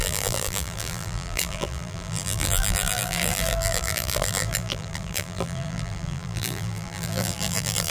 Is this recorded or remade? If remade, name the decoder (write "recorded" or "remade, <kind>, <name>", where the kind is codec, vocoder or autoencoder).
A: remade, vocoder, BigVGAN v2